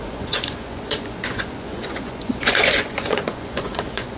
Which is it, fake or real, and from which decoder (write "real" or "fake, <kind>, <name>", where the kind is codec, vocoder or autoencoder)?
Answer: fake, vocoder, Vocos